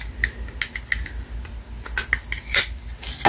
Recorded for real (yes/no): yes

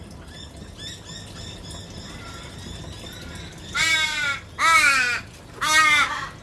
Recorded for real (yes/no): yes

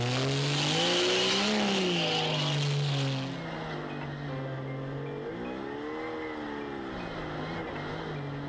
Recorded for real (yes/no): yes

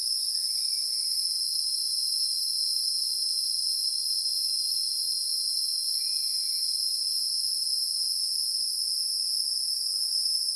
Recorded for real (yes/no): no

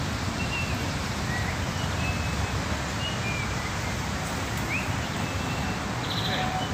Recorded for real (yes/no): yes